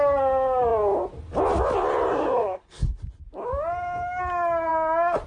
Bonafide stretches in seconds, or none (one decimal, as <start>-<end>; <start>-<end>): 0.0-2.1; 3.0-5.3